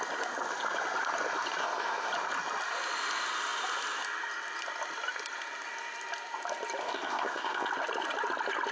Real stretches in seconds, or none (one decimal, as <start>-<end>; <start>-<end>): 0.0-1.6; 2.1-6.8; 7.7-8.7